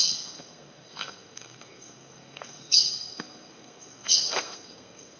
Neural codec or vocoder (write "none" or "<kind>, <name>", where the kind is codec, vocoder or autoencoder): codec, SNAC